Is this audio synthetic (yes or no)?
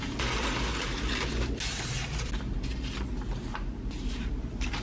no